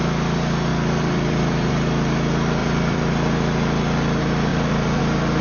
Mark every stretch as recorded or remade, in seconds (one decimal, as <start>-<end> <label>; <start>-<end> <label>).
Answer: 0.0-0.7 recorded; 0.7-1.7 remade; 1.7-2.6 recorded; 2.6-3.1 remade; 3.1-4.5 recorded; 4.5-5.0 remade; 5.0-5.4 recorded